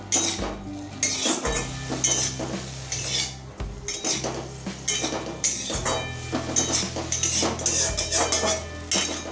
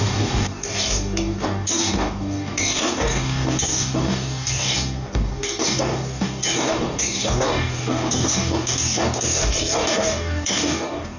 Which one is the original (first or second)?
first